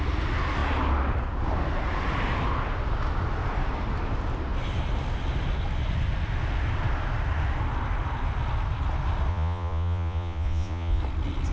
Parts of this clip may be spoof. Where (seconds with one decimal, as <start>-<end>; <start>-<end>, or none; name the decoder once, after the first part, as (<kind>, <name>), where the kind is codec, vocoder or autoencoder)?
9.3-11.0 (vocoder, Vocos)

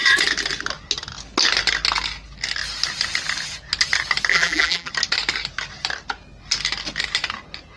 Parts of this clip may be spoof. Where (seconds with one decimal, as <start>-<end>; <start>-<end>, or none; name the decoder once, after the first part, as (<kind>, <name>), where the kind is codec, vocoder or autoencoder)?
4.3-4.9 (vocoder, BigVGAN v2)

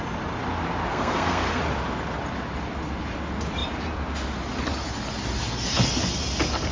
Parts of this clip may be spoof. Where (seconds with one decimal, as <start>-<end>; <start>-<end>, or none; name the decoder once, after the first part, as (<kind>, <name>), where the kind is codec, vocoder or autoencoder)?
0.9-1.6 (codec, SNAC)